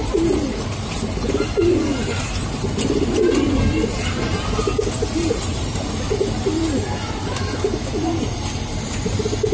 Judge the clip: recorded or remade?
recorded